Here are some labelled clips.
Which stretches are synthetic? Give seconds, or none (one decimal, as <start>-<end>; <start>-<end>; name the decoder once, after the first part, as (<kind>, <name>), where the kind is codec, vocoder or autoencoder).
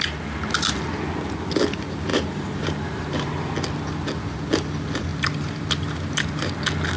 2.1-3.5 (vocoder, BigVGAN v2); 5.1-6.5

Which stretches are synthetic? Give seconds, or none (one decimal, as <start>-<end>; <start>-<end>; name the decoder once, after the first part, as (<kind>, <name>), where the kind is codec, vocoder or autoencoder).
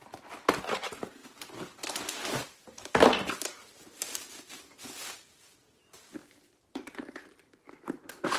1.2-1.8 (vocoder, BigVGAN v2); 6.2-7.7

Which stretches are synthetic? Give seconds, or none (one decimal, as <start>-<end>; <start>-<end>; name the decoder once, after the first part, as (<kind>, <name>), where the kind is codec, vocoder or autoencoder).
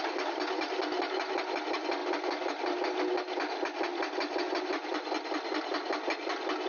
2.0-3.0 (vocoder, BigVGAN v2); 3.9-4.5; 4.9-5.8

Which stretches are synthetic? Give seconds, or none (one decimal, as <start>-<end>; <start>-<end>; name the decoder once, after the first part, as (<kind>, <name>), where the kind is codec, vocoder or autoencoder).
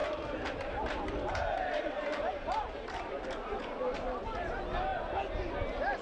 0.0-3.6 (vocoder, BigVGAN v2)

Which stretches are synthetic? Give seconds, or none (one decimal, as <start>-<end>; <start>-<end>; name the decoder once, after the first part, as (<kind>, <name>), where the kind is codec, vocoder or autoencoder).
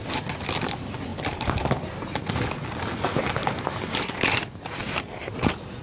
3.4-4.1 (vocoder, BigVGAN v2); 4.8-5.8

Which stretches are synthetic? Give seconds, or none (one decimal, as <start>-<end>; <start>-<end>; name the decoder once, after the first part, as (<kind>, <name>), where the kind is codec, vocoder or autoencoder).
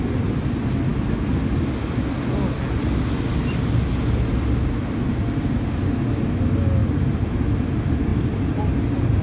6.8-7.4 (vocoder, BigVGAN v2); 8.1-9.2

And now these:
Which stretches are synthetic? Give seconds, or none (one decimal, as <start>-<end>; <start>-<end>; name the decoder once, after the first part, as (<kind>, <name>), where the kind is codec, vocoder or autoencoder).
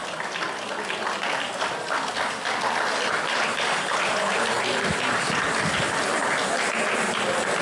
none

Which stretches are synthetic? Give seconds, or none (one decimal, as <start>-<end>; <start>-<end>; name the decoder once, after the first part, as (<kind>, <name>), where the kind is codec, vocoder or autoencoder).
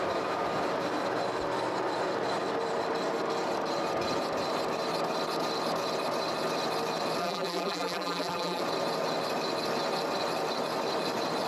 7.2-8.6 (vocoder, BigVGAN v2)